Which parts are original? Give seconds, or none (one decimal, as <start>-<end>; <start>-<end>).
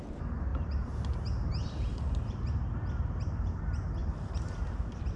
0.0-4.0